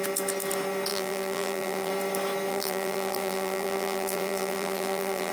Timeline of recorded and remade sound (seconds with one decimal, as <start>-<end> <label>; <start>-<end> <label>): 0.0-0.9 recorded; 0.9-1.9 remade; 1.9-2.5 recorded; 2.5-5.3 remade